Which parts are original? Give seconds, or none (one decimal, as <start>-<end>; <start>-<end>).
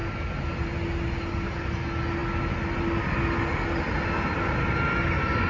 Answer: 0.0-5.5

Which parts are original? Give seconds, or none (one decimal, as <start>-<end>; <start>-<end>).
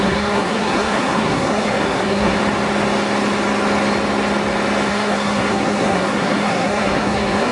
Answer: 2.4-4.9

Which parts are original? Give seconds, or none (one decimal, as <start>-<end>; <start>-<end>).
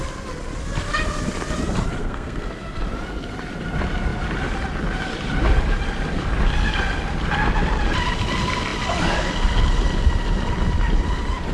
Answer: 0.0-2.0; 2.5-11.5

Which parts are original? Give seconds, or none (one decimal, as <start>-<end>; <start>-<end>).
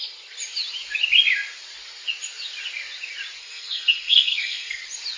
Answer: 0.0-3.4; 4.8-5.2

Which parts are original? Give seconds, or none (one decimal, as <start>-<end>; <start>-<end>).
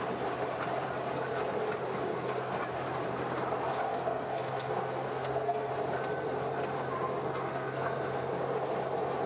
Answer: 0.0-2.1; 2.6-3.7; 5.7-7.3; 8.0-9.3